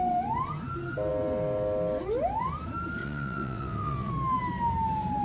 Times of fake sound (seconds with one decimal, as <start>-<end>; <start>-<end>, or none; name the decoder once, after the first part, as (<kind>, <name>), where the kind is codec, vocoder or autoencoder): 3.0-4.1 (vocoder, WaveNeXt)